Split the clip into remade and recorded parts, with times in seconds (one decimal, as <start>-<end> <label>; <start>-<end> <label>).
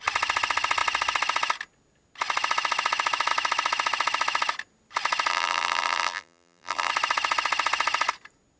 0.0-5.3 recorded; 5.3-6.9 remade; 6.9-8.6 recorded